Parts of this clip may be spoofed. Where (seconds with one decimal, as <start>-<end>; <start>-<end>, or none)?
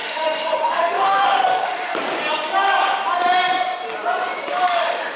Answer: 0.0-1.9; 4.5-5.2